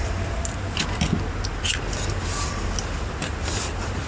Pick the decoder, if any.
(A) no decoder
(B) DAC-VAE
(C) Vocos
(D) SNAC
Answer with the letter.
A